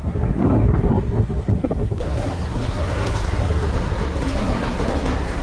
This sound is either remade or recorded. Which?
remade